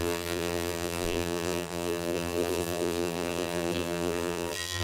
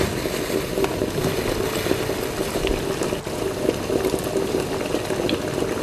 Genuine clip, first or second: second